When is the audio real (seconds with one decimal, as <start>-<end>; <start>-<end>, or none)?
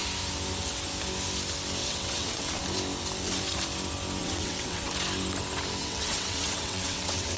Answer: 0.0-1.8; 2.6-4.2; 4.9-5.8